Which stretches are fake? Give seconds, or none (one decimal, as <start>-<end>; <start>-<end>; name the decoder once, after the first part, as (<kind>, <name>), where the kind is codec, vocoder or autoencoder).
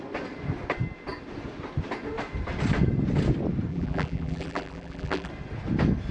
3.7-5.3 (vocoder, BigVGAN v2)